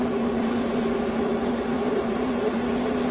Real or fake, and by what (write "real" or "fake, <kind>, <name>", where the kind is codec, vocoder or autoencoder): real